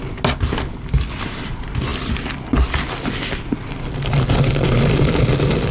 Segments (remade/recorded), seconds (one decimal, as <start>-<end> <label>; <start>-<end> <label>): 0.0-5.7 recorded